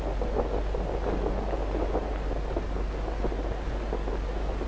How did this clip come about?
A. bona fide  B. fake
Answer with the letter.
A